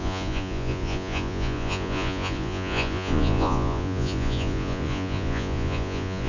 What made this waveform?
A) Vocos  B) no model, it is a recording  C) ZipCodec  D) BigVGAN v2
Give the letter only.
A